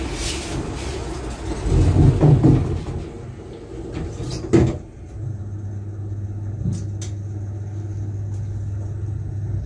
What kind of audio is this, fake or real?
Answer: real